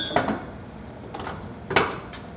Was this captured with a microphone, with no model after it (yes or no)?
yes